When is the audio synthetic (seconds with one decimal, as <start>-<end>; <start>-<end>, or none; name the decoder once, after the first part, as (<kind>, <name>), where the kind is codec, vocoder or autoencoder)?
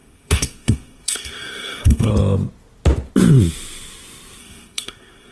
0.0-2.1 (codec, SNAC); 4.4-5.3